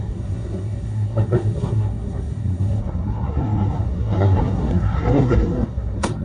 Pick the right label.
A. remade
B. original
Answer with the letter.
A